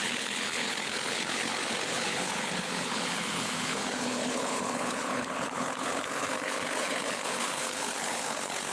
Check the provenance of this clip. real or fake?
fake